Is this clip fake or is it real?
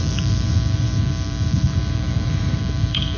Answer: fake